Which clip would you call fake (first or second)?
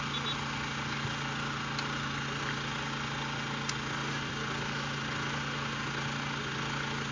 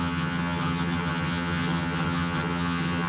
second